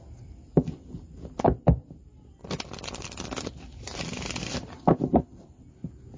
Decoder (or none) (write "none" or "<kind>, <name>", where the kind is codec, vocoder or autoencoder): none